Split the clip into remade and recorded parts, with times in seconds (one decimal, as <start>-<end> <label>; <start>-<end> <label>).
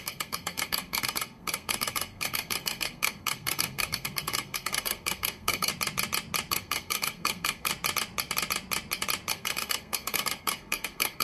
0.0-5.7 remade; 5.7-6.5 recorded; 6.5-7.7 remade; 7.7-9.3 recorded; 9.3-11.2 remade